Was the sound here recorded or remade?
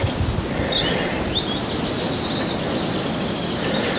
recorded